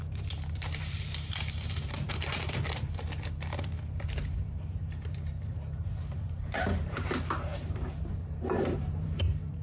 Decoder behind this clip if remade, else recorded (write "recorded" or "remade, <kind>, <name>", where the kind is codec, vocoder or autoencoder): remade, vocoder, BigVGAN v2